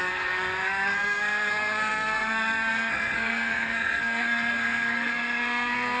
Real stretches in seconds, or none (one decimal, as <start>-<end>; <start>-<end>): none

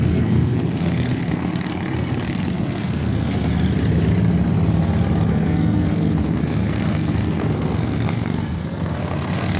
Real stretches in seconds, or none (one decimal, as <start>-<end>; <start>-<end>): 3.5-5.3

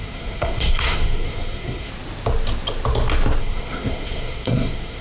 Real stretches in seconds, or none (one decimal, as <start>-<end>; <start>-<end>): 1.9-3.4